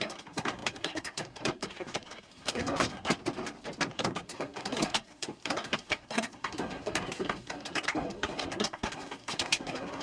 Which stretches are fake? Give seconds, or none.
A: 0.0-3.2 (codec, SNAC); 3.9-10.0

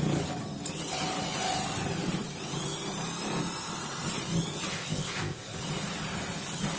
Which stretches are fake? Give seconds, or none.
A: 4.7-5.6 (codec, ZipCodec)